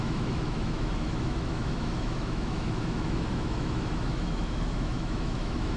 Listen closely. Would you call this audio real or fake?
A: fake